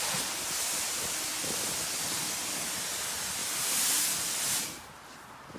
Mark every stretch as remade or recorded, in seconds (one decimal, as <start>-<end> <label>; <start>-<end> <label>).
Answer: 0.0-5.6 recorded